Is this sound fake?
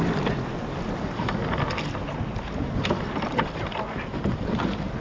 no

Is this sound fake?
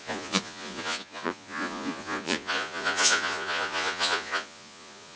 yes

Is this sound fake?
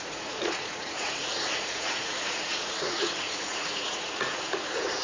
yes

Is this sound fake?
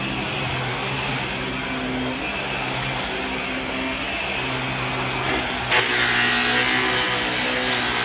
no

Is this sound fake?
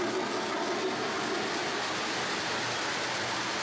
no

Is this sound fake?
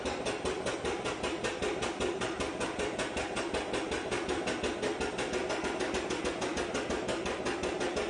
no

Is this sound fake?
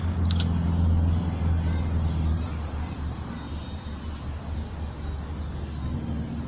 no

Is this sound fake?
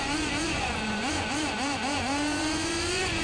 yes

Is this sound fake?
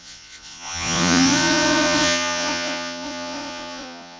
yes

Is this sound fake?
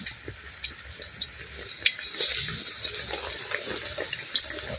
no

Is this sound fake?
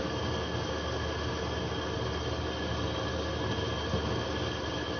no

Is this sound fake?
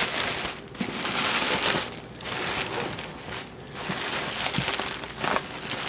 no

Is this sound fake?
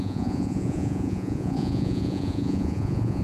yes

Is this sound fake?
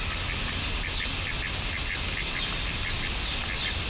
no